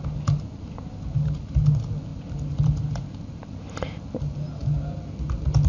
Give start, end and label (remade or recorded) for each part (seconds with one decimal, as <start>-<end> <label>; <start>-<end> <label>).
0.0-5.7 recorded